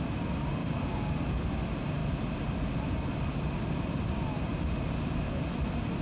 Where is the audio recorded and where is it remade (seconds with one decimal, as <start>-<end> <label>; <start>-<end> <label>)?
0.0-0.6 recorded; 0.6-1.1 remade; 1.1-6.0 recorded